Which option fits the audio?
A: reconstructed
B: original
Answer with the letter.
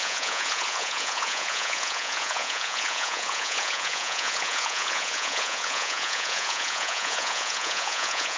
A